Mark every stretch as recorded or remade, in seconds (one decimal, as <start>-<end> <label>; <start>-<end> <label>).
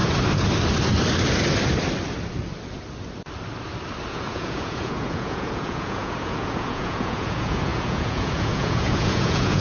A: 0.0-4.1 recorded; 4.1-9.6 remade